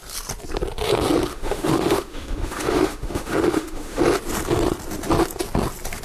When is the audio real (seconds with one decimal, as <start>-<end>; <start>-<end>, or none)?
0.0-1.3; 4.0-6.0